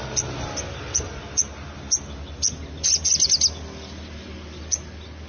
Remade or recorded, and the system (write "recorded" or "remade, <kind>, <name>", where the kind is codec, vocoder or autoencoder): recorded